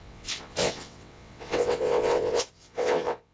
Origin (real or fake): fake